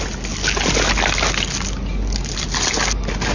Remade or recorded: recorded